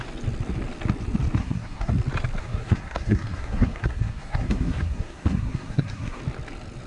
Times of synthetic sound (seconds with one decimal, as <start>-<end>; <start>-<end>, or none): 1.4-1.9; 2.4-6.2